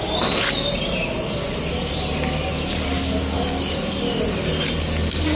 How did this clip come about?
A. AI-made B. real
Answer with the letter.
B